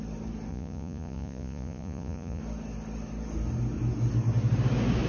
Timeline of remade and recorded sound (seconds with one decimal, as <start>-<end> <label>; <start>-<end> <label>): 0.0-0.5 recorded; 0.5-2.4 remade; 2.4-5.1 recorded